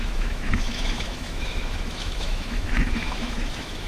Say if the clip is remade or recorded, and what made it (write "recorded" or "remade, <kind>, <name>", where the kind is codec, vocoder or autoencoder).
remade, autoencoder, DAC-VAE